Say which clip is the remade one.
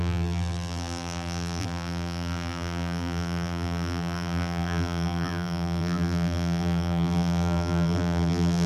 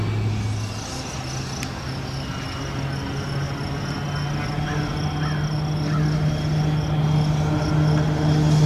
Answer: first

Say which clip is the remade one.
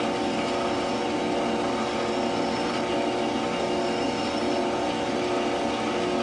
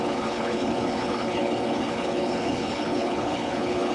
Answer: second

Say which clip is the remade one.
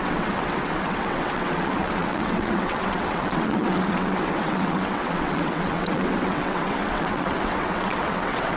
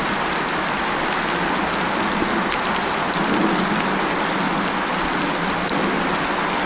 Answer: first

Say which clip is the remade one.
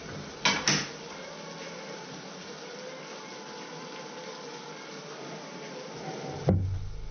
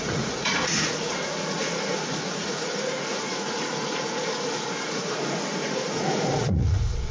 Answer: second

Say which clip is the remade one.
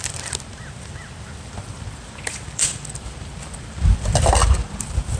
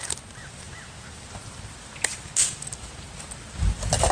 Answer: first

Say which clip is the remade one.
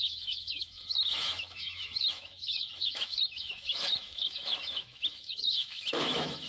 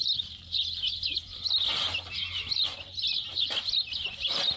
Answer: first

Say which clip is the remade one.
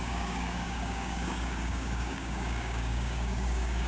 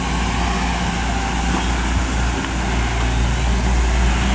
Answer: first